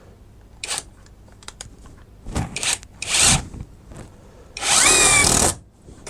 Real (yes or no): no